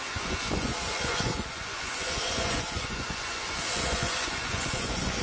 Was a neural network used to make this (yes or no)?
yes